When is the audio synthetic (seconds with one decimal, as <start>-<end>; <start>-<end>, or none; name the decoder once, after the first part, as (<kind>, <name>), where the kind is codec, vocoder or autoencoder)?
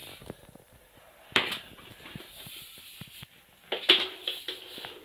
0.0-2.8 (vocoder, BigVGAN v2)